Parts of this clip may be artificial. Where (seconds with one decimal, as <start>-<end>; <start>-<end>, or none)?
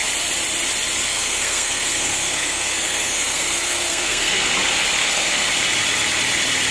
1.1-4.5; 5.0-5.5